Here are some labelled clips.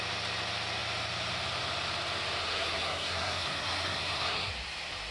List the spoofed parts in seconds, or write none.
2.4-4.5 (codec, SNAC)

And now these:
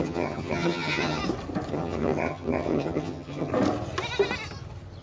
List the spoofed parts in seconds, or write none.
0.0-1.2 (vocoder, HiFi-GAN); 1.7-3.5

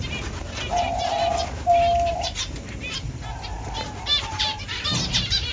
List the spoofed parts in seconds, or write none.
0.0-1.1 (vocoder, BigVGAN v2); 2.1-5.5

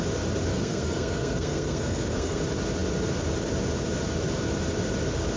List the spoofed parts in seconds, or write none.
0.5-2.4 (codec, SNAC)